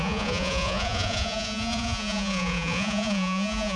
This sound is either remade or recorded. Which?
remade